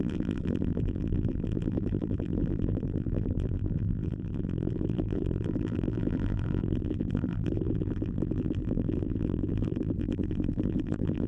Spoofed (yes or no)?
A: yes